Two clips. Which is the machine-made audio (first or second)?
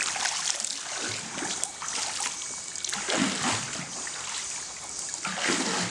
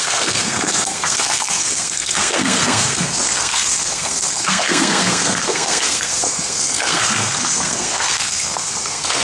second